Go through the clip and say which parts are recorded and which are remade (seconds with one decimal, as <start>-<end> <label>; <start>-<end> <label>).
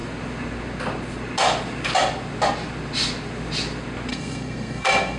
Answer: 0.0-4.1 recorded; 4.1-5.2 remade